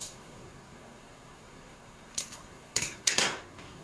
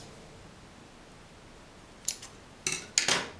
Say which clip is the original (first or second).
second